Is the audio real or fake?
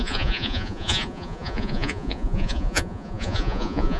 fake